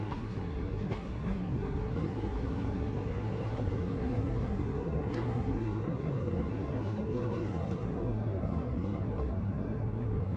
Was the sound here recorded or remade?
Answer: remade